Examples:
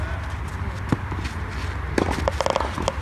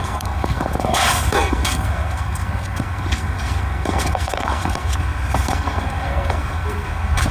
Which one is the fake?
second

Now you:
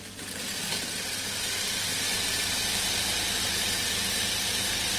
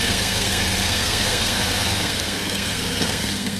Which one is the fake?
second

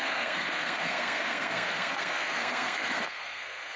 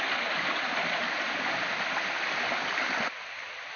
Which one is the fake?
first